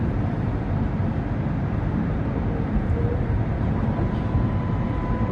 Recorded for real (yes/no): no